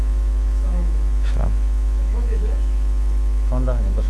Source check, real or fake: fake